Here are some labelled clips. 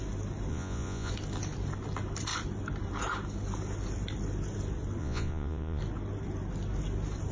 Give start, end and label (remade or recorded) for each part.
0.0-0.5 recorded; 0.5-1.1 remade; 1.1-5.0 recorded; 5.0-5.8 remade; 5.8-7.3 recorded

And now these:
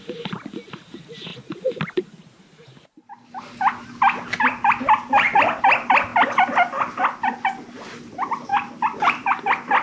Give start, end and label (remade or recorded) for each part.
0.0-8.5 recorded; 8.5-9.4 remade; 9.4-9.8 recorded

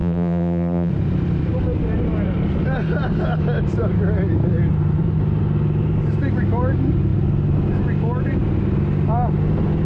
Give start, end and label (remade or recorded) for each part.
0.0-0.9 remade; 0.9-9.8 recorded

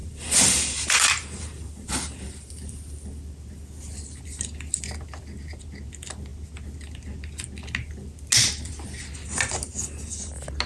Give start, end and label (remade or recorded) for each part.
0.0-2.5 remade; 2.5-10.7 recorded